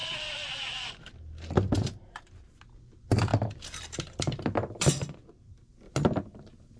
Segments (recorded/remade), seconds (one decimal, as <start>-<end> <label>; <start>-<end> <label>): 0.0-0.9 remade; 0.9-3.3 recorded; 3.3-5.2 remade; 5.2-6.8 recorded